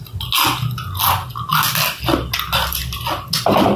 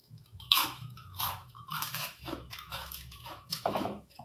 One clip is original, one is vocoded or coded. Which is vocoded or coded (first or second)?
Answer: second